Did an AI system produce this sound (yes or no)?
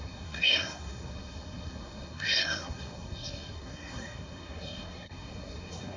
yes